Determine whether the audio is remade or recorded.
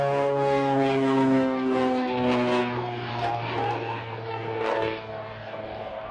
remade